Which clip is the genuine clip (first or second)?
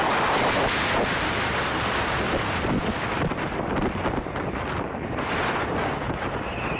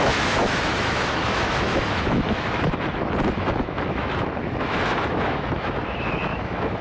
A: first